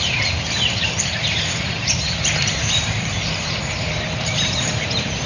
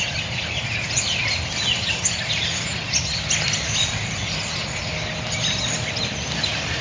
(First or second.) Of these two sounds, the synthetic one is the first